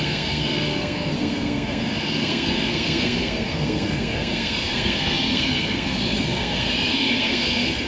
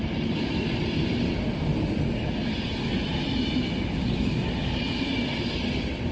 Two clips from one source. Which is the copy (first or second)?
first